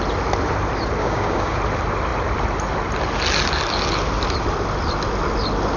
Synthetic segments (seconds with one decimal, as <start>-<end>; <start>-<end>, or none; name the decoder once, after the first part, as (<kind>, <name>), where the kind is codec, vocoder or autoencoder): 1.0-1.6 (codec, DAC)